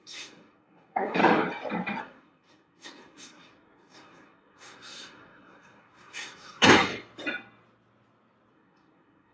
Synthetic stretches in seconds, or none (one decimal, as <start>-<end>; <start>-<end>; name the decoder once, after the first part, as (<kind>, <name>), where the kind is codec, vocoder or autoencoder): 0.0-1.2 (codec, SNAC); 2.0-6.9; 8.5-9.3